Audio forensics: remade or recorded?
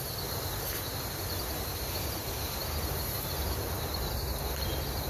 recorded